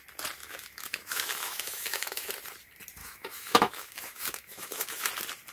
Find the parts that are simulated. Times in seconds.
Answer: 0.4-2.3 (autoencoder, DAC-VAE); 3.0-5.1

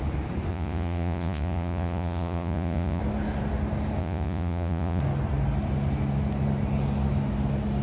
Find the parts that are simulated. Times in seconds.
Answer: 0.5-3.0 (vocoder, Vocos); 4.0-5.0

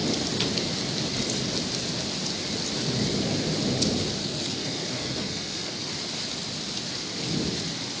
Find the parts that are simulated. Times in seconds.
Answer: 4.2-5.9 (codec, SNAC)

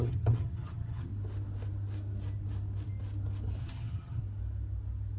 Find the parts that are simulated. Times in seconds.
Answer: 0.0-1.1 (vocoder, HiFi-GAN); 3.6-4.2

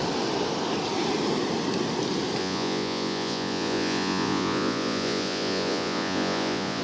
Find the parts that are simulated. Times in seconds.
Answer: 2.4-6.8 (vocoder, Vocos)

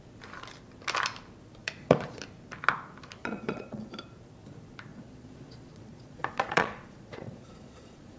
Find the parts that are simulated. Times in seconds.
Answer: 1.6-2.2 (vocoder, Vocos); 3.2-4.0; 4.9-8.2

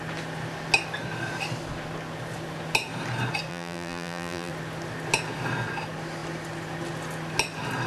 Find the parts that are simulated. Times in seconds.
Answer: 3.5-4.5 (vocoder, BigVGAN v2)

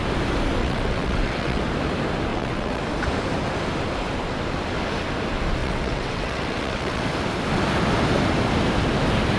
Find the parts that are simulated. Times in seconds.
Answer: 0.6-1.6 (vocoder, WaveNeXt); 2.3-2.8; 5.6-7.0